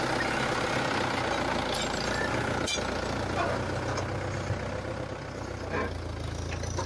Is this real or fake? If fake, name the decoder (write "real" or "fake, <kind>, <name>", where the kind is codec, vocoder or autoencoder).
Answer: real